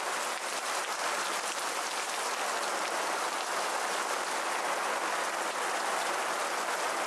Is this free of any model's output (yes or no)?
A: yes